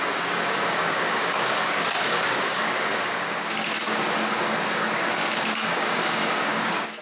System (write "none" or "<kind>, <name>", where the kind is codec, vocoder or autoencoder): codec, DAC